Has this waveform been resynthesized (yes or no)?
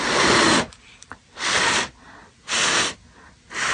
no